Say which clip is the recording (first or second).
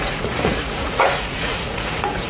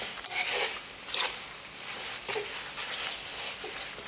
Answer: second